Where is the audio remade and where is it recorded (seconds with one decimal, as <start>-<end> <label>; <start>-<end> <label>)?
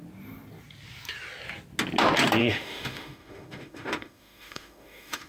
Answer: 0.0-2.4 recorded; 2.4-5.3 remade